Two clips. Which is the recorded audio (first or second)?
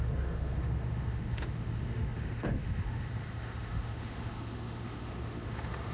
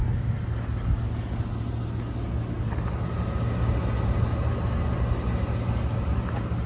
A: second